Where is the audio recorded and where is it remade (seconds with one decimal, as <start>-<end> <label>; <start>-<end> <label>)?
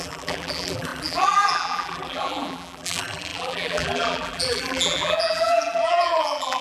0.0-6.6 remade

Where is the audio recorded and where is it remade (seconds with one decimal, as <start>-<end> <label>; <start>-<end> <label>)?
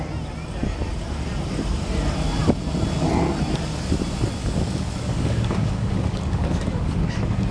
0.0-4.4 recorded; 4.4-7.5 remade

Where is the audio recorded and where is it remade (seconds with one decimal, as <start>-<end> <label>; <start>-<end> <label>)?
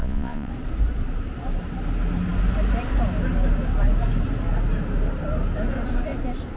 0.0-0.5 remade; 0.5-6.6 recorded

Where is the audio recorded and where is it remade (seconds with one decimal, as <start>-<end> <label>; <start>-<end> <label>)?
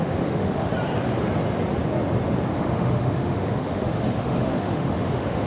0.0-0.7 remade; 0.7-2.5 recorded; 2.5-5.5 remade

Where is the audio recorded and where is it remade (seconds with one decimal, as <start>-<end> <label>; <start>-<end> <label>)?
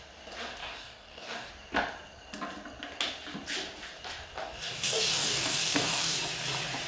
0.0-0.6 recorded; 0.6-1.5 remade; 1.5-4.4 recorded; 4.4-6.2 remade; 6.2-6.9 recorded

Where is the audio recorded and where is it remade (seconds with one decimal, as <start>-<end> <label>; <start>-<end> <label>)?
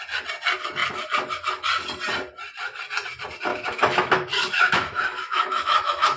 0.0-3.5 recorded; 3.5-6.2 remade